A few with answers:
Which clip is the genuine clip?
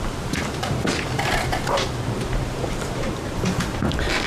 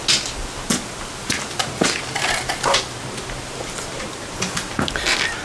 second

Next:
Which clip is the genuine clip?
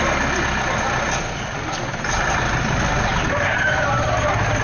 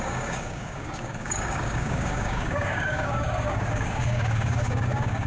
first